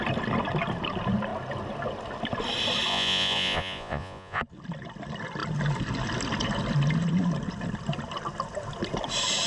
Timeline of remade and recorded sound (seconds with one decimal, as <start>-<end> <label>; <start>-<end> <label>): 0.0-2.9 recorded; 2.9-4.4 remade; 4.4-9.5 recorded